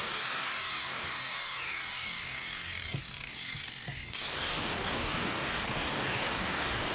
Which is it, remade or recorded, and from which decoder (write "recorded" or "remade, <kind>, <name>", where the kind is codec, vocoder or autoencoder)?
remade, codec, DAC